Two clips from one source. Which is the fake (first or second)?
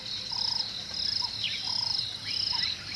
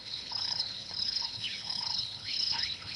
second